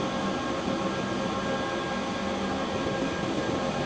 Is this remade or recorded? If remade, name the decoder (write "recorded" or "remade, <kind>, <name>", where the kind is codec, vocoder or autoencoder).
recorded